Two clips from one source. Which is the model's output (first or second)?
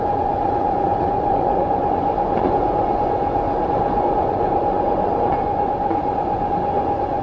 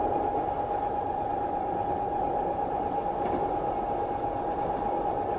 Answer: first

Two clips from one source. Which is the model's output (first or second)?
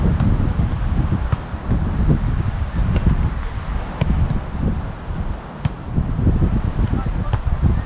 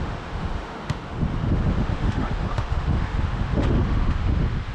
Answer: second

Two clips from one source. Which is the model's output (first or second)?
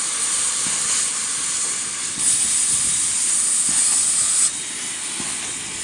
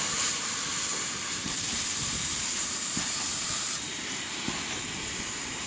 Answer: second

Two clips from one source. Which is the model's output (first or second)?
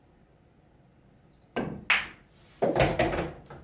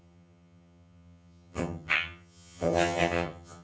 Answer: second